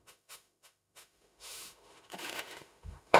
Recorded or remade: remade